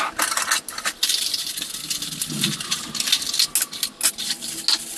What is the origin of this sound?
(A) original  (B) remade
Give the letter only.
A